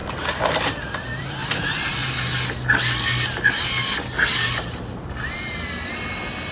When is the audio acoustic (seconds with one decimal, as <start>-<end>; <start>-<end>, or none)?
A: 0.0-0.6; 2.0-5.9